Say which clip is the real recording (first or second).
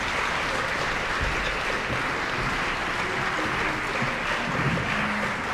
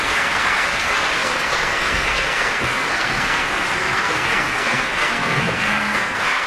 first